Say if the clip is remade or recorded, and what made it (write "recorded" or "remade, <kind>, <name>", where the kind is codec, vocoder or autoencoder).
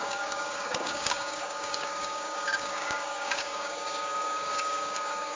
remade, codec, DAC